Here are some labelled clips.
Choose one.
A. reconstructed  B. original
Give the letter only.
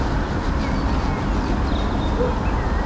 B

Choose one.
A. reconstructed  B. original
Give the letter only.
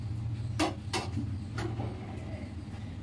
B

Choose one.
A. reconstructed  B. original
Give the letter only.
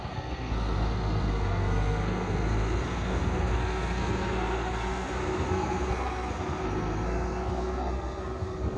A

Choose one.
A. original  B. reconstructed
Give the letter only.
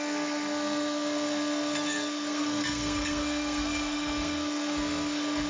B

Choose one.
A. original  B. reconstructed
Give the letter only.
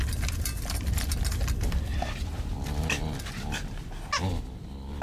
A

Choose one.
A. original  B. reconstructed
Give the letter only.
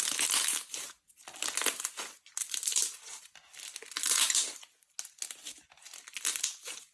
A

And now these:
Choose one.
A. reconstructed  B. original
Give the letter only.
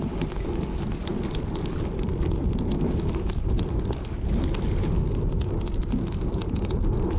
B